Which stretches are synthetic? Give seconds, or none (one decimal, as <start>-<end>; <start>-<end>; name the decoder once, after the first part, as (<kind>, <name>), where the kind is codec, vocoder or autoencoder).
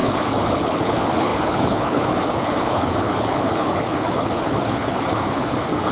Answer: 0.0-5.9 (codec, HILCodec)